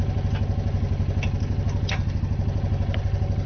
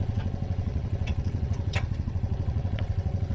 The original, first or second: first